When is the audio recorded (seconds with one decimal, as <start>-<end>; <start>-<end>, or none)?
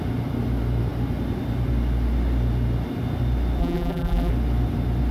0.0-3.6; 4.3-5.1